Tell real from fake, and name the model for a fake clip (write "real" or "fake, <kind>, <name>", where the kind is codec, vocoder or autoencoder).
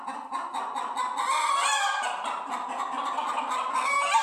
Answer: real